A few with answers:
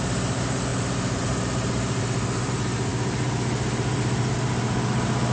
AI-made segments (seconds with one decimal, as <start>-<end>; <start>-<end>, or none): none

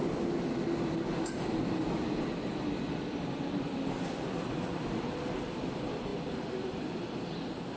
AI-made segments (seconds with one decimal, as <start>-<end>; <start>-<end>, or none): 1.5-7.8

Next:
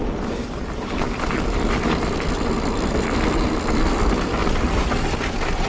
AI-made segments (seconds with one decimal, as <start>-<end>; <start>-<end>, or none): 0.0-4.4

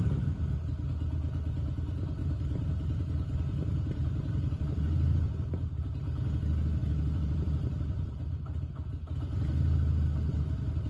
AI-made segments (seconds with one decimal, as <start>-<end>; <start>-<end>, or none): 2.2-5.9; 6.8-8.2

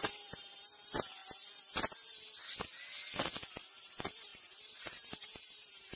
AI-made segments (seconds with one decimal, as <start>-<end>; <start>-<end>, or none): 0.0-1.2; 3.8-6.0